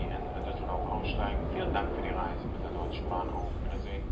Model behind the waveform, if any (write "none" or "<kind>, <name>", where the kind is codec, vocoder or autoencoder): none